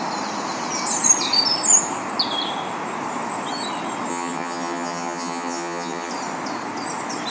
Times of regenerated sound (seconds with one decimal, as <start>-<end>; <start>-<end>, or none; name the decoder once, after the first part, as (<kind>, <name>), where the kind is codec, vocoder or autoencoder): 4.1-6.1 (vocoder, HiFi-GAN)